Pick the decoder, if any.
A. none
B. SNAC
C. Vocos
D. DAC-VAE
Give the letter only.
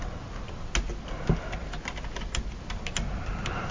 A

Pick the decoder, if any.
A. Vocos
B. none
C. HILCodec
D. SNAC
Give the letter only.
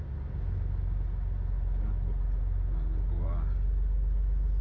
B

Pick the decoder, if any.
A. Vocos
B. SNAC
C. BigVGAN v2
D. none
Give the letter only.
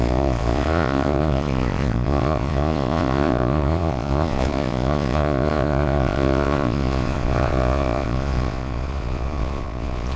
A